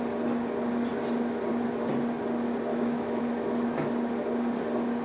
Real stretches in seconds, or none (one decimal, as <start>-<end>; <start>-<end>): 0.0-2.7; 3.2-5.0